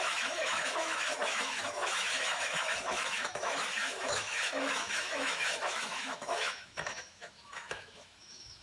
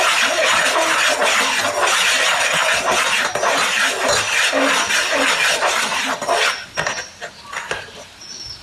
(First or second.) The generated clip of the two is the first